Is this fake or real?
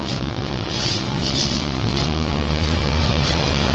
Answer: fake